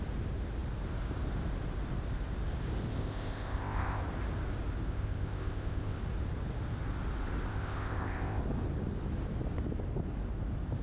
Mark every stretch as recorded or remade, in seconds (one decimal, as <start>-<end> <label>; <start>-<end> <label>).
0.0-2.9 recorded; 2.9-4.0 remade; 4.0-4.9 recorded; 4.9-6.0 remade; 6.0-7.5 recorded; 7.5-8.4 remade; 8.4-10.8 recorded